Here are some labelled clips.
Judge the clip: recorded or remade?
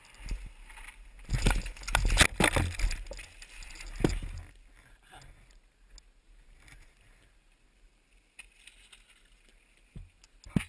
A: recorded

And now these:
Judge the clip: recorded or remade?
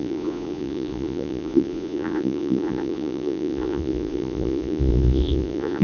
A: remade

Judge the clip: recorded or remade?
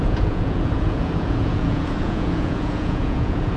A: remade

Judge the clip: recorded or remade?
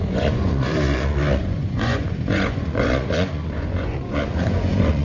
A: remade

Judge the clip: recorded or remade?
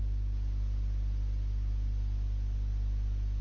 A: recorded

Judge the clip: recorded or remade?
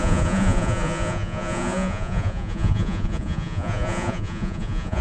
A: remade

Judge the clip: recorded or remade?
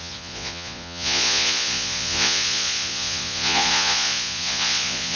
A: remade